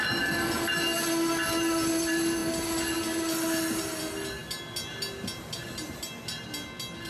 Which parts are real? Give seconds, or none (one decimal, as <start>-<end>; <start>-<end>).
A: 0.0-7.1